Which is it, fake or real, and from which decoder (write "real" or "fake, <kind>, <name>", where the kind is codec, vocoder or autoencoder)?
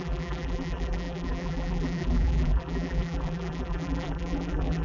fake, vocoder, BigVGAN v2